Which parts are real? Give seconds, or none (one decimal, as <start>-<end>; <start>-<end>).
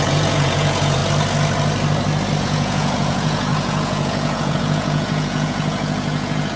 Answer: 1.0-2.4